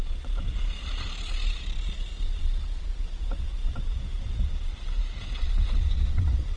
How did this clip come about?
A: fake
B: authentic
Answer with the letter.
A